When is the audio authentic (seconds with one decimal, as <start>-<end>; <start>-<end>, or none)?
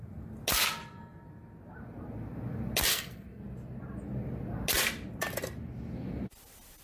0.0-2.9; 3.4-6.8